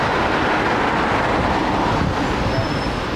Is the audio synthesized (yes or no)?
no